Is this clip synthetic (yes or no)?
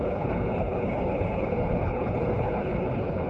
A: yes